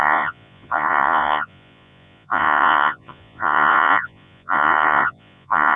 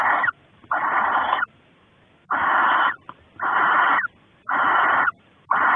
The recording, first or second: second